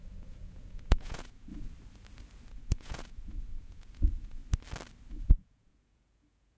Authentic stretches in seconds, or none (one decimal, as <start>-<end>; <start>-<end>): 1.5-2.5; 4.4-5.1